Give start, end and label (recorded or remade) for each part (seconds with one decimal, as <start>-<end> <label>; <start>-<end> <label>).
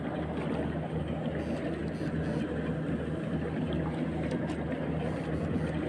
0.0-5.9 recorded